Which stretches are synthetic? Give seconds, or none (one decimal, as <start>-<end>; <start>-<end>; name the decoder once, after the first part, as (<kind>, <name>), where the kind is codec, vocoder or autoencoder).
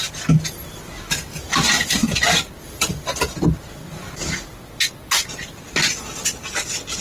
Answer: none